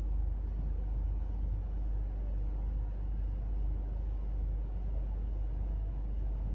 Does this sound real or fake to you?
real